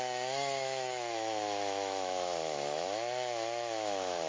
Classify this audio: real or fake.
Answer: fake